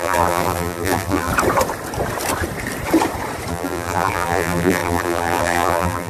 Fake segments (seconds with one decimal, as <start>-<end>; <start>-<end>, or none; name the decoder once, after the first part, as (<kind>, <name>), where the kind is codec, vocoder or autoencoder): 0.0-1.3 (vocoder, BigVGAN v2); 3.5-6.1